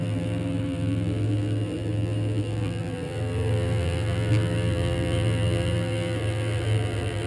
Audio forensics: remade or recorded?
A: remade